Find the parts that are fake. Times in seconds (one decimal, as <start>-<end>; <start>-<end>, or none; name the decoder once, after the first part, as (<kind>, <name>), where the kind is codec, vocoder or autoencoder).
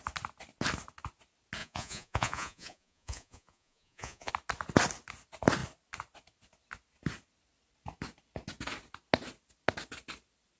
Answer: 1.6-4.3 (vocoder, Vocos)